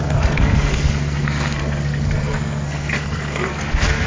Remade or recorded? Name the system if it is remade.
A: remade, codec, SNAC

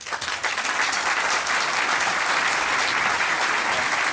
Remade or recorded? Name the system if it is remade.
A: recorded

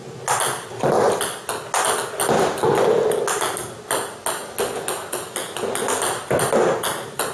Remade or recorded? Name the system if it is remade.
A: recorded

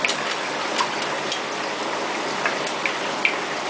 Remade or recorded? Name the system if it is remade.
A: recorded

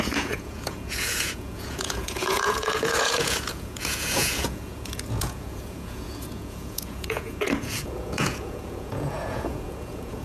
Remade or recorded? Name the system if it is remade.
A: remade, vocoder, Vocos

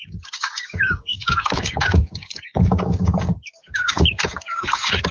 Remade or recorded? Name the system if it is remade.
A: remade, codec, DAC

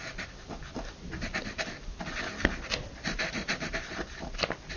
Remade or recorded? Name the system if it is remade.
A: recorded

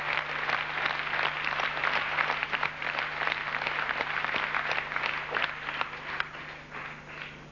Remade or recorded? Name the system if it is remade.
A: recorded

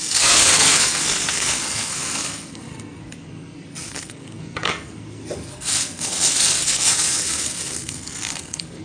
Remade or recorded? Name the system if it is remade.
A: remade, codec, SNAC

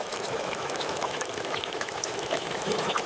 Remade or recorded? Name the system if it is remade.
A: remade, autoencoder, DAC-VAE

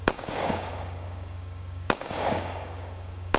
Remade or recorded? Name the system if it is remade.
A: remade, codec, DAC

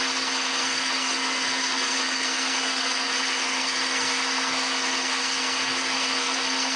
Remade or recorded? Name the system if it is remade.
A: remade, codec, SNAC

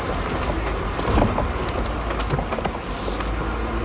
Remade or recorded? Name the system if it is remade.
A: recorded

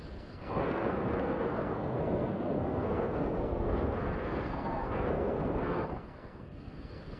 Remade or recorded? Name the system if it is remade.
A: remade, codec, SNAC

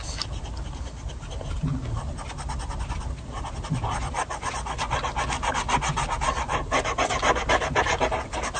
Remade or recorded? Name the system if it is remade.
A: recorded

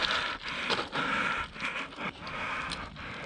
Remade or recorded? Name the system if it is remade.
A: recorded